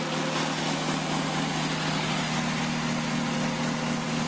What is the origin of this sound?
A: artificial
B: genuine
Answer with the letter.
B